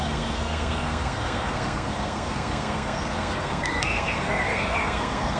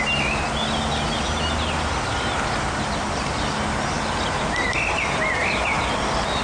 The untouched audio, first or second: second